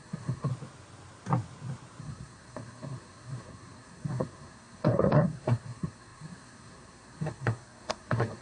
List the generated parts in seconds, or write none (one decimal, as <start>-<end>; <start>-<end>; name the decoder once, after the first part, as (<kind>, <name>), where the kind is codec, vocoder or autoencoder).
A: 0.0-0.5 (codec, SNAC); 2.0-8.4